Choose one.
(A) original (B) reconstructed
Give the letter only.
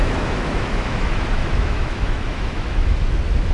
B